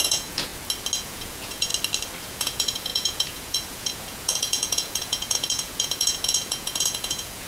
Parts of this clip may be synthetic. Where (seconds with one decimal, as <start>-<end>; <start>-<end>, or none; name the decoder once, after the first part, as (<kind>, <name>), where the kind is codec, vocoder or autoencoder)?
0.0-0.5 (vocoder, Vocos); 1.0-1.7; 2.2-7.5